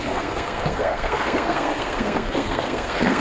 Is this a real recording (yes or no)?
no